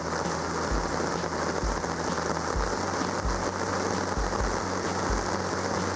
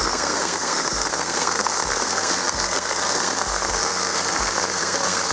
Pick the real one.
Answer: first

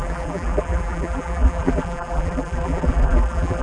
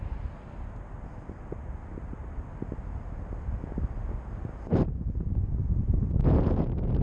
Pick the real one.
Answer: second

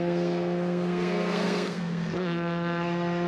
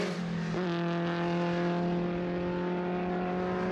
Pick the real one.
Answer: second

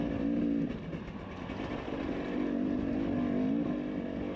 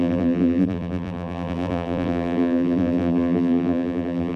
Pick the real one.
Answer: first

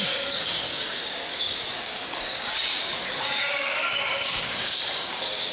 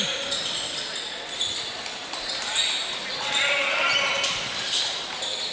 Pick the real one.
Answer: second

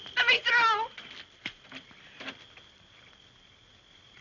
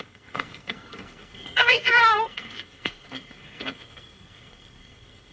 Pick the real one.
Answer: first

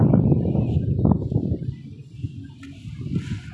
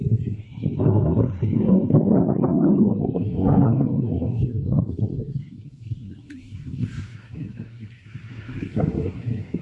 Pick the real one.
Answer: first